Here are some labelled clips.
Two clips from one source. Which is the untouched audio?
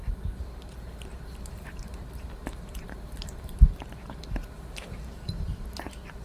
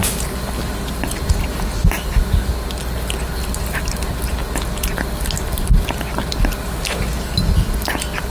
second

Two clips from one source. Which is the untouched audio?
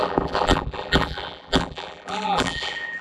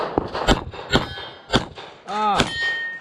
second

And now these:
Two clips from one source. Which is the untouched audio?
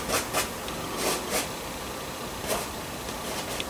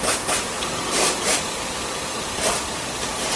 first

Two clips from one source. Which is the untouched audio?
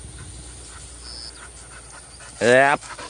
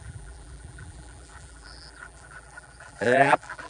first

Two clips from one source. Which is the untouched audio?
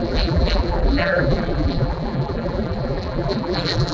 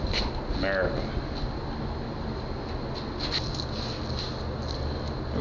second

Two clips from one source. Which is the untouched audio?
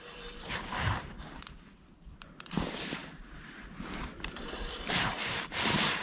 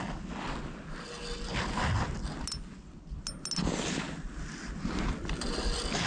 second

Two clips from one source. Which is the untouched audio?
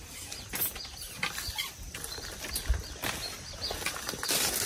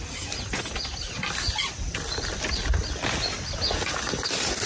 second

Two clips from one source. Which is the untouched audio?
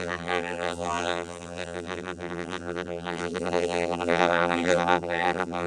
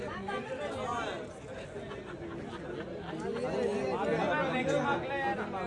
second